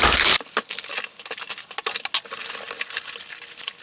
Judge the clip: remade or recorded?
recorded